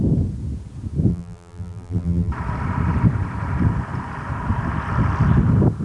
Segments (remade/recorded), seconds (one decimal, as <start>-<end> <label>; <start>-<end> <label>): 0.0-1.1 recorded; 1.1-2.3 remade; 2.3-5.8 recorded